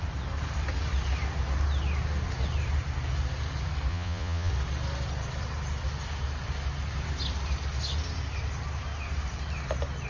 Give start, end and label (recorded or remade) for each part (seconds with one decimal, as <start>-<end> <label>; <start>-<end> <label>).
0.0-3.9 recorded; 3.9-4.5 remade; 4.5-10.1 recorded